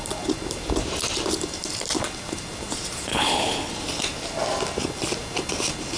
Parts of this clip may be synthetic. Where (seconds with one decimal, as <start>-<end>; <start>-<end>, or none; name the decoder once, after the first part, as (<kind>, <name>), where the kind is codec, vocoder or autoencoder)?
3.1-3.7 (codec, HILCodec)